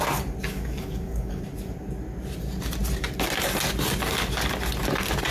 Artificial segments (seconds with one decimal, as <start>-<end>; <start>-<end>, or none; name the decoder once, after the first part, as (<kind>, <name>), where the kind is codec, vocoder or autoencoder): 0.5-1.4 (codec, DAC)